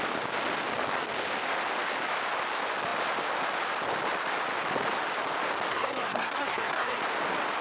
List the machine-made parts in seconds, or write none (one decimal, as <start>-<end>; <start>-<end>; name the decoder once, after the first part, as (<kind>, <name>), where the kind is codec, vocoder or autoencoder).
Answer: 5.7-7.0 (codec, SNAC)